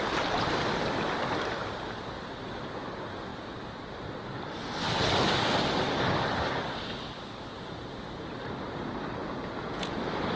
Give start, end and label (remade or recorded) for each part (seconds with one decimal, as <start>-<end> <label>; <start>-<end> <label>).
0.0-9.2 recorded; 9.2-10.0 remade; 10.0-10.4 recorded